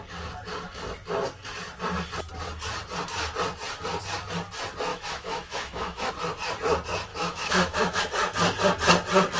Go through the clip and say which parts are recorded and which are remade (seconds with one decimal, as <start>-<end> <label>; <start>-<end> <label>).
0.0-4.9 recorded; 4.9-6.1 remade; 6.1-7.1 recorded; 7.1-8.0 remade; 8.0-9.4 recorded